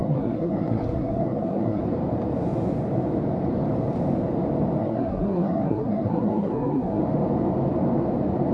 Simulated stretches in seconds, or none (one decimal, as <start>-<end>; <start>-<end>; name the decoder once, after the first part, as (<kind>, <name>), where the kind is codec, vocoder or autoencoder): 0.0-1.8 (codec, SNAC); 4.8-7.0